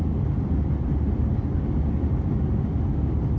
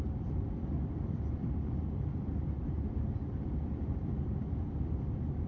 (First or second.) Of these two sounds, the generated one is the second